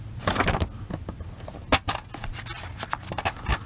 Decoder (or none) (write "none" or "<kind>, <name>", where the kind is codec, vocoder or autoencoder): none